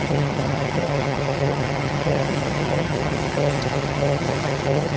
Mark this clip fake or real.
fake